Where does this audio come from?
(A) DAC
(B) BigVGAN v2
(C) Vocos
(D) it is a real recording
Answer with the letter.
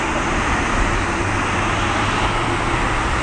D